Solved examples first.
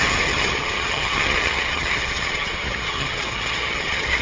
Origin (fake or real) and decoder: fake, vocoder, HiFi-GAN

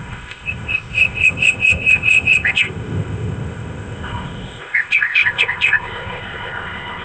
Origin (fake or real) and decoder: fake, codec, ZipCodec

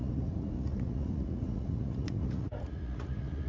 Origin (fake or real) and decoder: fake, vocoder, Vocos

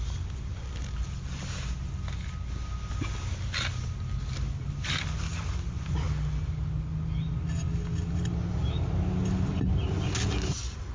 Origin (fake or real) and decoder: real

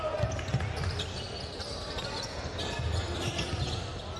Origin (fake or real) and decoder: real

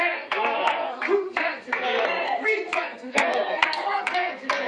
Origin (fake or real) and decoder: fake, codec, SNAC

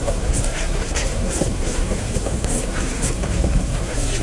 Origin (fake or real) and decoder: fake, codec, SNAC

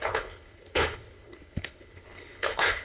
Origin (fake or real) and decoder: fake, codec, HILCodec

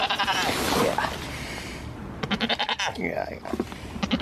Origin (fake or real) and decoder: real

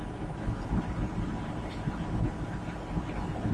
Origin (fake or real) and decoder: real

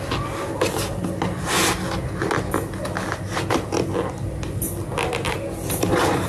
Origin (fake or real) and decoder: real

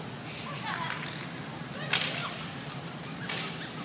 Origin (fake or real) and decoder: real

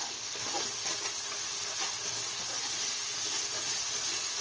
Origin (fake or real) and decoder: real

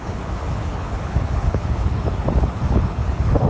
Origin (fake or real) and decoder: fake, codec, HILCodec